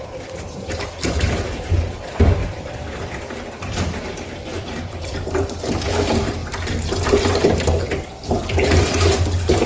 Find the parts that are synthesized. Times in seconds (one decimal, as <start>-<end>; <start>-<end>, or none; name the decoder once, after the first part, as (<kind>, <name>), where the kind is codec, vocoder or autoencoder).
0.0-2.4 (vocoder, BigVGAN v2); 3.2-9.7